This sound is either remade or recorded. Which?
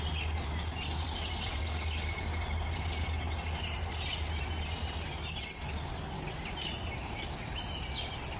recorded